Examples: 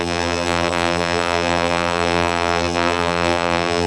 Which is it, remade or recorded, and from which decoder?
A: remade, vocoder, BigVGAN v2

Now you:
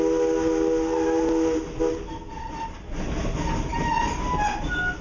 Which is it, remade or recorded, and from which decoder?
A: recorded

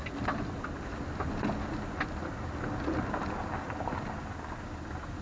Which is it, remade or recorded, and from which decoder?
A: recorded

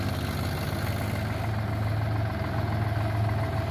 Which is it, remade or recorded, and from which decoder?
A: recorded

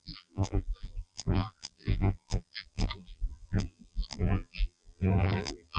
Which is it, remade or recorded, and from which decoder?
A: remade, vocoder, BigVGAN v2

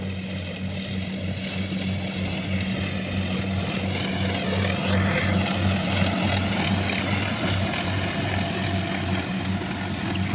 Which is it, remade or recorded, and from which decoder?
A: recorded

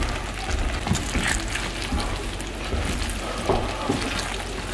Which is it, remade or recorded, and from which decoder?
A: recorded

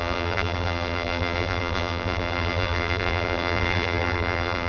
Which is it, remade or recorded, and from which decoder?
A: remade, vocoder, BigVGAN v2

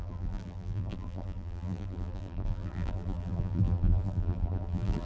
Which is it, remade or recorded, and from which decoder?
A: remade, vocoder, BigVGAN v2